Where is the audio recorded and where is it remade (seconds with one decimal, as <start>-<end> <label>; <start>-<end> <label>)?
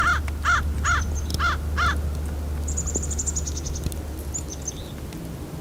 0.0-5.6 recorded